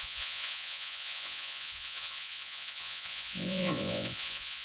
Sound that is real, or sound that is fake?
fake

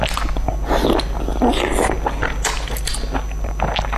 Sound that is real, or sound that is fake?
real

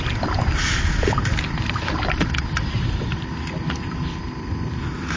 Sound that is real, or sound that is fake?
real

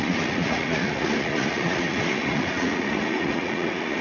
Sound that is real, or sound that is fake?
fake